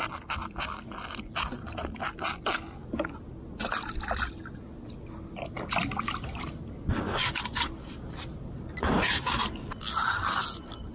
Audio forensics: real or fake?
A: real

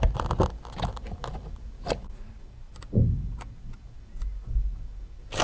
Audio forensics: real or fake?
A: real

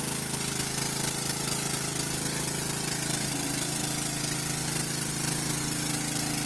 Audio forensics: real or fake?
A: real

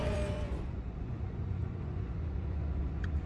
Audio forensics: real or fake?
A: fake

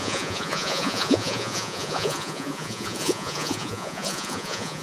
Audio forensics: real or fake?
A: fake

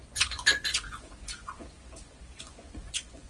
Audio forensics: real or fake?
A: fake